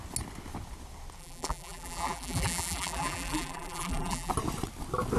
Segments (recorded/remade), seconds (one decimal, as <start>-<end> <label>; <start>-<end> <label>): 0.0-1.2 recorded; 1.2-4.3 remade; 4.3-5.2 recorded